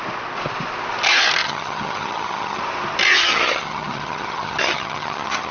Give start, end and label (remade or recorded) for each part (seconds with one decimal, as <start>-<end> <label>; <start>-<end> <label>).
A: 0.0-1.4 recorded; 1.4-2.6 remade; 2.6-3.2 recorded; 3.2-5.5 remade